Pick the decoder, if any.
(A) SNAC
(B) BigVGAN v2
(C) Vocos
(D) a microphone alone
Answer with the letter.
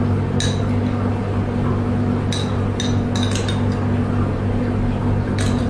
D